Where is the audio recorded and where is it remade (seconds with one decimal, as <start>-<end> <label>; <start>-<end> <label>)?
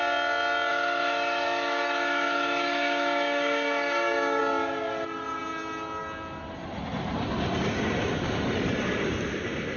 0.0-0.7 recorded; 0.7-4.4 remade; 4.4-9.8 recorded